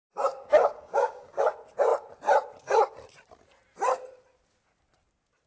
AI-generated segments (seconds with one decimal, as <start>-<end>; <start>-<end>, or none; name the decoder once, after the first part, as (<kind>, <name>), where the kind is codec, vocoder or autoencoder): 0.6-1.4 (codec, DAC)